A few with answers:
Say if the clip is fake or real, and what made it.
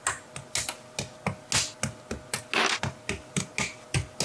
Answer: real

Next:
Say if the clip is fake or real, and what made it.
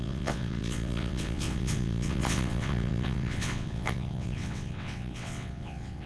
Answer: fake, vocoder, WaveNeXt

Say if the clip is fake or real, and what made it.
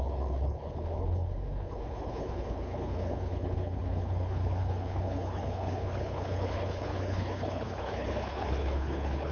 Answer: fake, codec, HILCodec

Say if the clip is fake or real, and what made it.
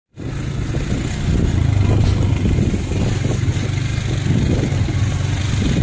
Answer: real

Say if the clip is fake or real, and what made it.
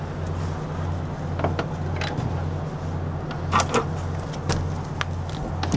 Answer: real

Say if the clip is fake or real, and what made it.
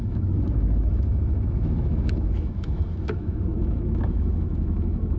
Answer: fake, autoencoder, DAC-VAE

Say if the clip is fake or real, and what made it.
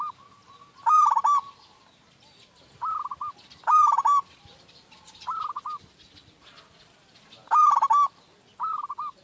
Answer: real